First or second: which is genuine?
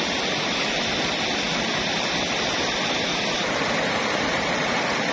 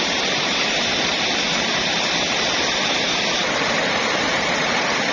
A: first